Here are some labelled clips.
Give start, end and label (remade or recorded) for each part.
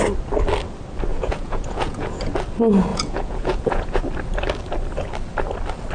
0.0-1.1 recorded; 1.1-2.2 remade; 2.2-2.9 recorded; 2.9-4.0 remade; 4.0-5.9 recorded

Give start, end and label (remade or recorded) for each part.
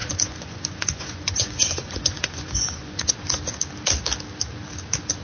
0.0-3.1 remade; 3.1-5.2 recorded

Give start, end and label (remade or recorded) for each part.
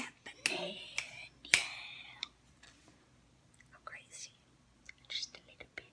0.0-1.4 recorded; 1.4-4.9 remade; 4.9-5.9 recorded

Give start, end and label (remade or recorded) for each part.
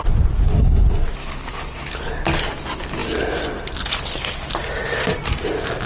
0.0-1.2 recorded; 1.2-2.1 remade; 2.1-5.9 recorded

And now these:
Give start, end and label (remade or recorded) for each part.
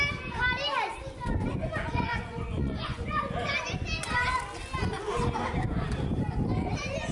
0.0-1.5 recorded; 1.5-3.2 remade; 3.2-7.1 recorded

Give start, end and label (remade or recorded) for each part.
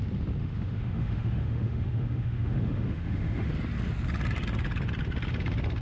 0.0-0.4 recorded; 0.4-3.5 remade; 3.5-5.8 recorded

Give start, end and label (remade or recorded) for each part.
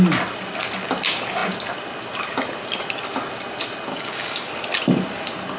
0.0-3.9 recorded; 3.9-4.5 remade; 4.5-5.6 recorded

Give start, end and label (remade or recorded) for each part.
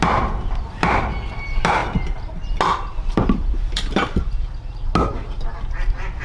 0.0-6.2 recorded